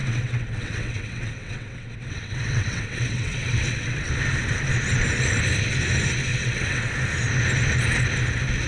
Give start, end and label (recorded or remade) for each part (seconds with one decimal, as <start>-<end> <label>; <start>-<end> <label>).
0.0-4.1 remade; 4.1-6.3 recorded; 6.3-6.9 remade; 6.9-8.7 recorded